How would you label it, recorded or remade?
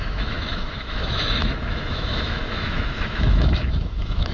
remade